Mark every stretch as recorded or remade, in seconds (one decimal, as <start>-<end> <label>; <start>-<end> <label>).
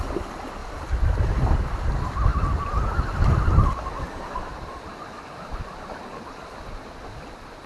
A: 0.0-7.7 recorded